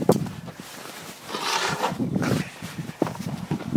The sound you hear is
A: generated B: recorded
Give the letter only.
A